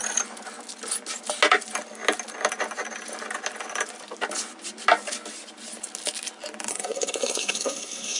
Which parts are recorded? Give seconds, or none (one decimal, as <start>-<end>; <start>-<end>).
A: 0.0-6.7